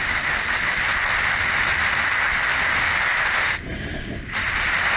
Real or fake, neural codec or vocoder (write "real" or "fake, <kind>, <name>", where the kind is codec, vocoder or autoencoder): real